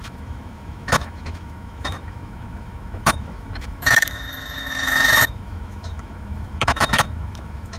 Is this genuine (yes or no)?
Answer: no